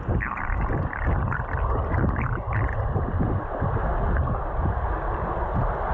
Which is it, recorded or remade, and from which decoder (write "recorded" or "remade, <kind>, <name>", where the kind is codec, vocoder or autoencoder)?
recorded